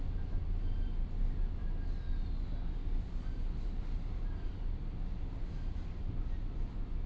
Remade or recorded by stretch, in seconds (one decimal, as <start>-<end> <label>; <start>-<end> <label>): 0.0-7.1 recorded